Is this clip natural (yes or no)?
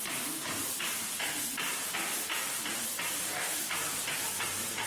yes